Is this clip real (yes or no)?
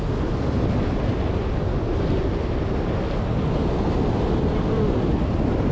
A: yes